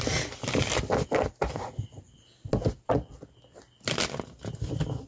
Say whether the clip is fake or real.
real